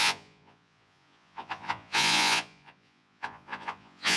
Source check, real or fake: fake